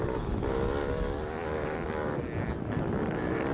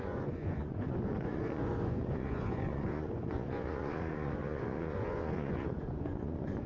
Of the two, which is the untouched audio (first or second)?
first